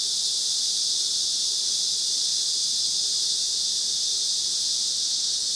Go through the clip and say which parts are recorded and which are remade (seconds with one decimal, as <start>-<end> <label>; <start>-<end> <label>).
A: 0.0-5.6 recorded